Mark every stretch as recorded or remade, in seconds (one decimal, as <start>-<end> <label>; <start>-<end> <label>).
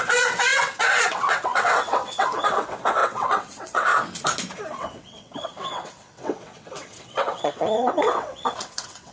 0.0-3.9 remade; 3.9-4.8 recorded; 4.8-9.1 remade